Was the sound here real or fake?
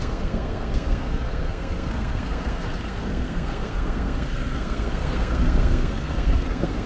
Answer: fake